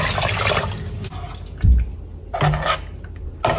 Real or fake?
real